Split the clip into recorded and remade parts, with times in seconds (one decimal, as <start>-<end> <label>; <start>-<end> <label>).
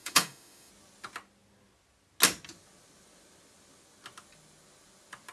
0.0-0.7 remade; 0.7-5.3 recorded